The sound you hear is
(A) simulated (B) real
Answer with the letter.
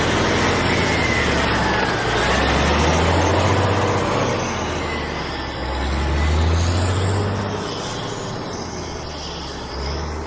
B